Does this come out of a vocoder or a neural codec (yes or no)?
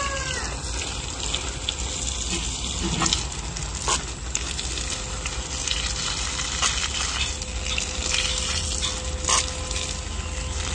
no